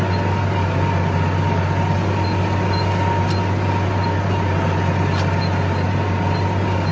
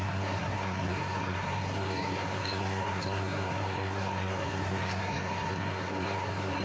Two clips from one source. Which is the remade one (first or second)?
second